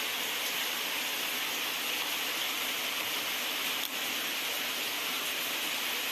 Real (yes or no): yes